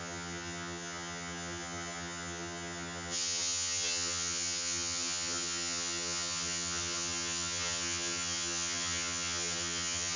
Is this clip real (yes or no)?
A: no